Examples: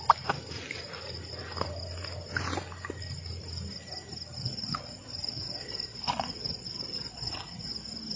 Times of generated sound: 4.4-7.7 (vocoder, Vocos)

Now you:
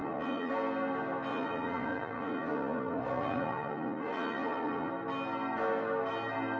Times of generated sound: 0.0-0.5 (vocoder, Vocos); 1.3-4.9